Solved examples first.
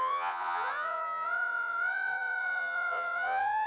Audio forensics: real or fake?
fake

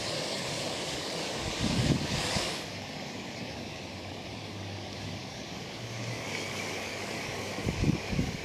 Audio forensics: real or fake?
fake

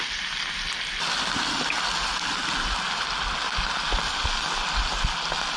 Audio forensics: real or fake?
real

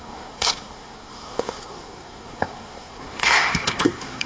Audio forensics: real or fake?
fake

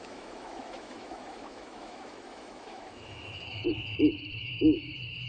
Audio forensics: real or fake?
fake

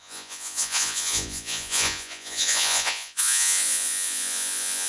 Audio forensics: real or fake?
fake